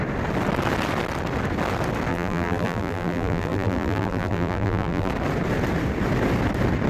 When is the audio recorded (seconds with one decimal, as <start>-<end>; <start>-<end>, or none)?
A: 0.0-2.1; 5.1-6.9